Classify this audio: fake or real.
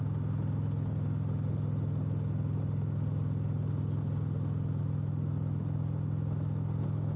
real